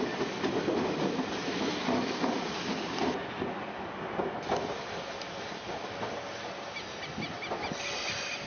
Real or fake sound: real